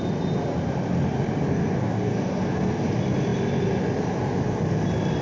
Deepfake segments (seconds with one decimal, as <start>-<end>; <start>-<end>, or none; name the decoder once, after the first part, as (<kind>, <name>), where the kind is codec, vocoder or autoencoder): 1.5-2.8 (codec, SNAC)